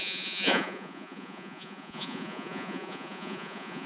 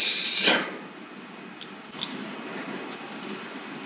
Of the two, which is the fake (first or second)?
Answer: first